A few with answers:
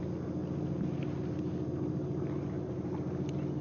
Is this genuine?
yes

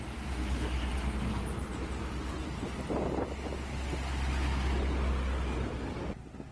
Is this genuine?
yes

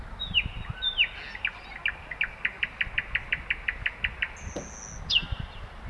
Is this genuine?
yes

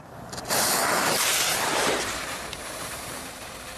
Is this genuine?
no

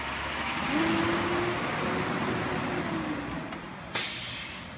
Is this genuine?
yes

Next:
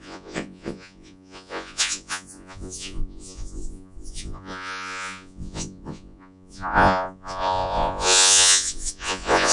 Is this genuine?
no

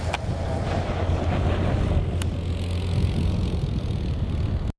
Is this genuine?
yes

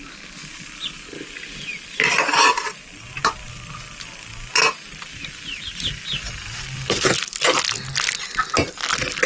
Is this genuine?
yes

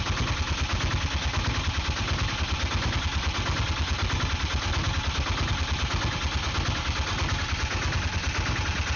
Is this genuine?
yes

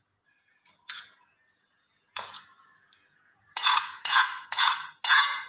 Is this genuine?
no